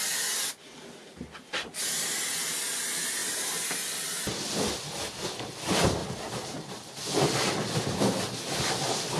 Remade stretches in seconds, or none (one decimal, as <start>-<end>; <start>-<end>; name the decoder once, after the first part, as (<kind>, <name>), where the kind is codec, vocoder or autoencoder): 3.2-5.2 (vocoder, BigVGAN v2); 6.0-7.5